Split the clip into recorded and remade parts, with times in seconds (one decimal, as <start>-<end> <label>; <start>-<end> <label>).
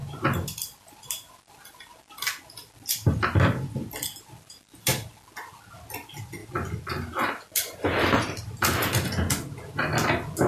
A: 0.0-10.5 recorded